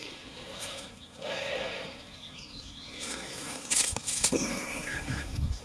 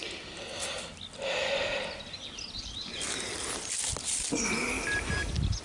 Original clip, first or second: second